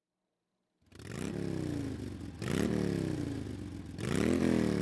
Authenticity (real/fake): real